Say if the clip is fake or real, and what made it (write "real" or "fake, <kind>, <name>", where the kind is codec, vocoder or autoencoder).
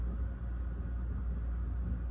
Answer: real